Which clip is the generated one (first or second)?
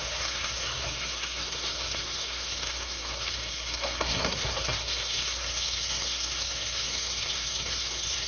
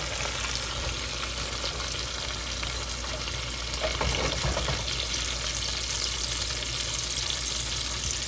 first